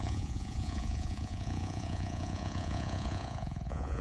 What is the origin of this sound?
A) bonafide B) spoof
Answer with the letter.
B